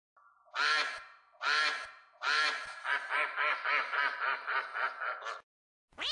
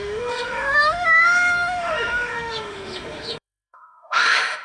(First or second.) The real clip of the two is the first